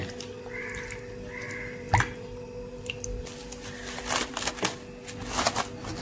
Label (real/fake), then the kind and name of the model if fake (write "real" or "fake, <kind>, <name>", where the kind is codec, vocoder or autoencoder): real